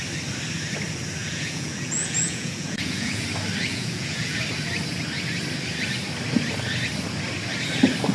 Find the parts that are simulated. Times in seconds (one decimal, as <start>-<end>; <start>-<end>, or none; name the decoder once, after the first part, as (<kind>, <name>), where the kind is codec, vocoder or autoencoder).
1.2-3.2 (vocoder, Vocos); 3.7-4.4